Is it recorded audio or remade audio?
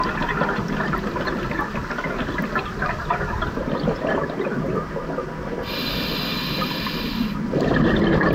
recorded